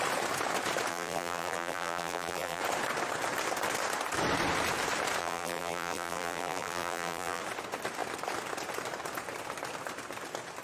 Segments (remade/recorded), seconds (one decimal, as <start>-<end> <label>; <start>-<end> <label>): 0.0-0.9 recorded; 0.9-2.6 remade; 2.6-5.2 recorded; 5.2-7.4 remade; 7.4-10.6 recorded